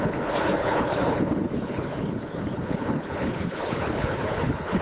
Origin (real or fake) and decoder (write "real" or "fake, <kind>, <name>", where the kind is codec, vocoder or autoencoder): fake, codec, HILCodec